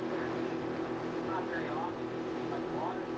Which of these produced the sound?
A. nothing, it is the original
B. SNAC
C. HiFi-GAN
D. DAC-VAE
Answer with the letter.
A